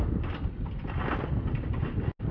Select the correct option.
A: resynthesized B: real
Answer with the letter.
B